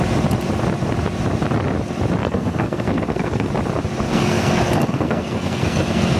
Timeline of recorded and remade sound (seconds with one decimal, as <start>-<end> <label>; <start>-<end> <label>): 0.0-2.2 recorded; 2.2-3.5 remade; 3.5-4.1 recorded; 4.1-6.2 remade